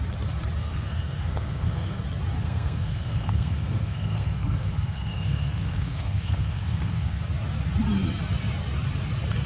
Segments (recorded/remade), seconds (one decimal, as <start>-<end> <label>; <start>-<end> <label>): 0.0-0.6 recorded; 0.6-2.0 remade; 2.0-2.4 recorded; 2.4-7.2 remade; 7.2-9.5 recorded

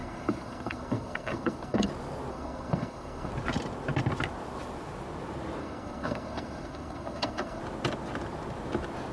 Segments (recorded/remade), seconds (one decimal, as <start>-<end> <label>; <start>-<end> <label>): 0.0-1.9 remade; 1.9-2.3 recorded; 2.3-3.3 remade; 3.3-5.6 recorded; 5.6-7.6 remade; 7.6-9.1 recorded